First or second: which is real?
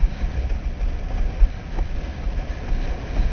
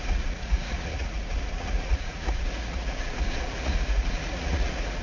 first